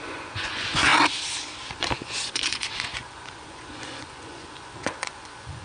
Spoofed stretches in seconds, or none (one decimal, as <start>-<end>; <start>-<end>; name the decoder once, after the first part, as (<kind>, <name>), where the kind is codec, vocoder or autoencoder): 0.0-0.9 (vocoder, Vocos); 1.7-5.6